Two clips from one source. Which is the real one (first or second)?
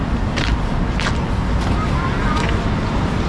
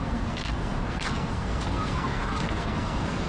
first